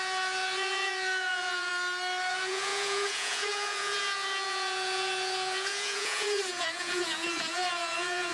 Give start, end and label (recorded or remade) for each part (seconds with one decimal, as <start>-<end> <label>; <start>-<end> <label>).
0.0-1.7 remade; 1.7-2.3 recorded; 2.3-8.3 remade